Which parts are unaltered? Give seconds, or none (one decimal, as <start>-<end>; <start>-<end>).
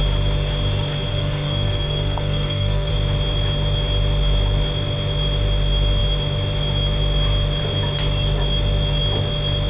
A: 0.0-1.1; 2.9-9.7